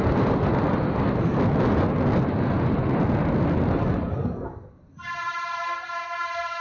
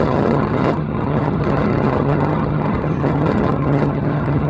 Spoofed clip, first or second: second